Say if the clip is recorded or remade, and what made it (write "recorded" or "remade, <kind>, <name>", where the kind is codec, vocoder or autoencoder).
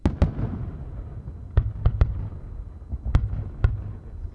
recorded